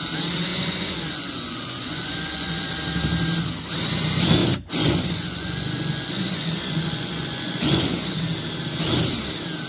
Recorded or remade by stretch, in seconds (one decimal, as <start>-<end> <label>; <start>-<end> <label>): 0.0-0.5 recorded; 0.5-2.7 remade; 2.7-4.4 recorded; 4.4-8.2 remade; 8.2-9.7 recorded